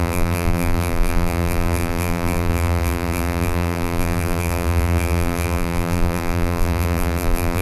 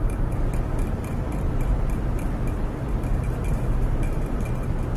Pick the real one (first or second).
second